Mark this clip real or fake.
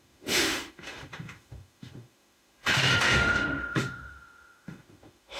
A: fake